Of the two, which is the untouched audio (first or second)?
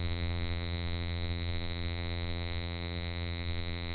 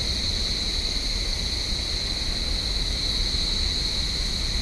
second